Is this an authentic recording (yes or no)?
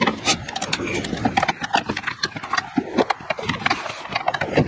yes